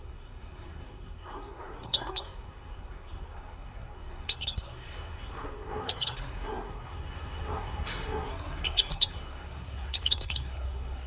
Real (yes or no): no